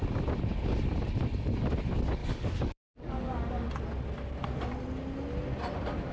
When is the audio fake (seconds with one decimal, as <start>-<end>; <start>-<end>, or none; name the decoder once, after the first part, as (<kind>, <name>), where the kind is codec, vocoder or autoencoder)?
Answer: 2.2-3.5 (codec, DAC)